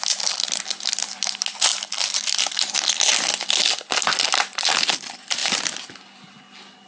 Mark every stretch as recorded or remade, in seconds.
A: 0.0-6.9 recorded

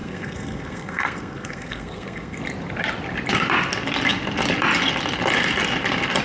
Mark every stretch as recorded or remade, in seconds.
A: 0.0-2.4 remade; 2.4-6.2 recorded

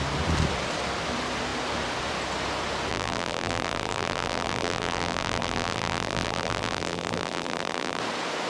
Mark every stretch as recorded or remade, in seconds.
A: 0.0-2.9 recorded; 2.9-8.0 remade; 8.0-8.5 recorded

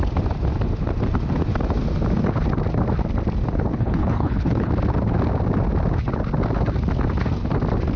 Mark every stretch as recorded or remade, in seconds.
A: 0.0-3.7 recorded; 3.7-4.7 remade; 4.7-8.0 recorded

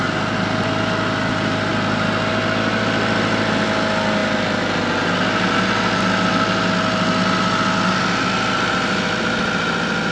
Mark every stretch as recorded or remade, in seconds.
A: 0.0-10.1 recorded

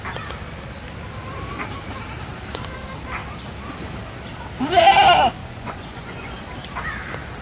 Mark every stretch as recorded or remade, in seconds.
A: 0.0-5.4 recorded; 5.4-6.4 remade; 6.4-7.4 recorded